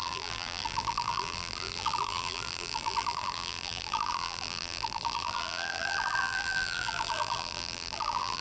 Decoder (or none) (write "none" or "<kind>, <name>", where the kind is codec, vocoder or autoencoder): vocoder, BigVGAN v2